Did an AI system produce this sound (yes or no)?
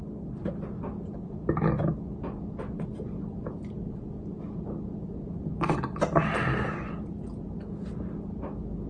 no